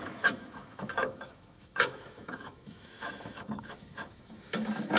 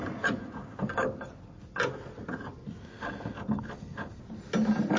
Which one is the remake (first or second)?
first